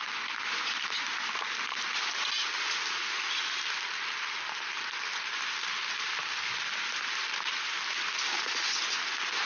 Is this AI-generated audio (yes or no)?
no